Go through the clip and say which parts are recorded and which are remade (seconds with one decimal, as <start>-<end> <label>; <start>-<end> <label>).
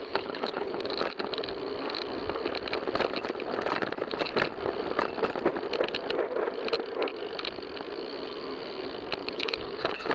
0.0-0.9 remade; 0.9-9.2 recorded; 9.2-10.1 remade